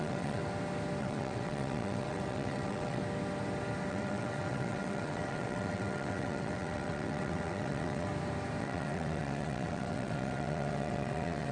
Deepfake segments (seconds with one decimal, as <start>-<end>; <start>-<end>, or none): 0.0-0.4; 1.0-3.0; 3.9-8.1; 8.6-11.5

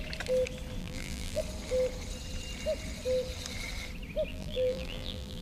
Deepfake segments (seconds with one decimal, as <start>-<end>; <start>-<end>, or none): 0.8-1.4; 4.3-5.4

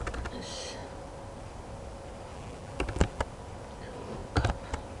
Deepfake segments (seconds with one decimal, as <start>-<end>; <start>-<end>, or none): 2.3-3.2

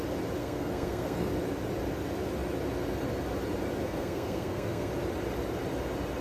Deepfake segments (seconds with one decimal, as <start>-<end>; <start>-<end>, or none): 0.4-1.3; 3.8-4.9